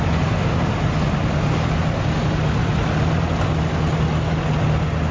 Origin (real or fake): real